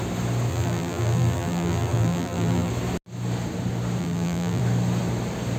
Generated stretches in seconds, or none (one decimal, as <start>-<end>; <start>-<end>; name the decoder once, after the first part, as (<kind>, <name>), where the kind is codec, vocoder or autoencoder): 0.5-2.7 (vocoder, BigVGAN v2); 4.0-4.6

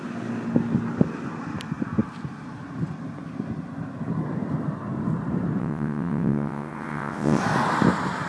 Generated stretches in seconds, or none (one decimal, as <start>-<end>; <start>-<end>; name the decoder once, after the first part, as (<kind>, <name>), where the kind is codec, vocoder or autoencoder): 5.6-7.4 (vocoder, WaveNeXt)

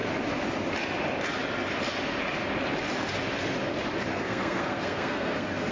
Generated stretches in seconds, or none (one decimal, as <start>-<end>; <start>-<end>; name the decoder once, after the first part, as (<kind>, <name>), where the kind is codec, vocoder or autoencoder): 4.1-5.7 (codec, SNAC)

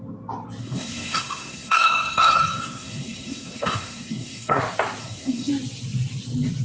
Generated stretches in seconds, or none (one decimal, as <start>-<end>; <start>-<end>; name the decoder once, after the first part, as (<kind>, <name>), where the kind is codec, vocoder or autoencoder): 0.6-4.6 (codec, SNAC); 5.0-5.5

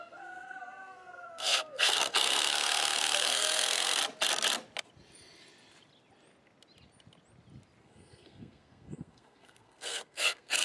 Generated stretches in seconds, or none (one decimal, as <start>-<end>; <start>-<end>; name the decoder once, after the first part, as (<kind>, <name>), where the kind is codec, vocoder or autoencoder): 0.0-4.0 (codec, SNAC); 7.8-10.6

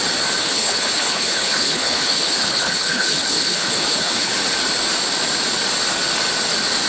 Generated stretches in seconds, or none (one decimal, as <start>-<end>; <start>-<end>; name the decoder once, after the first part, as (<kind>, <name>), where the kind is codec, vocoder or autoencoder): 0.4-4.3 (codec, HILCodec)

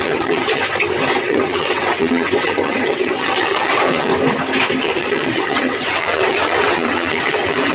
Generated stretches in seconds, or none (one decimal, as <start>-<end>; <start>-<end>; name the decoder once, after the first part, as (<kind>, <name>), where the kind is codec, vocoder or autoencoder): 0.0-0.6 (vocoder, WaveNeXt); 1.2-4.1; 4.8-7.7